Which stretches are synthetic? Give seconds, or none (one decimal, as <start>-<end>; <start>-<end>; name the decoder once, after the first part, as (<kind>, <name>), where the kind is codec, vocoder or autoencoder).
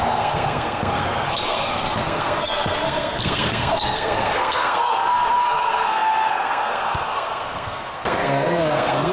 0.0-9.1 (codec, SNAC)